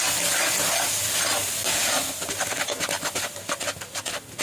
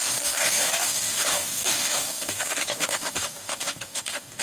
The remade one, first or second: second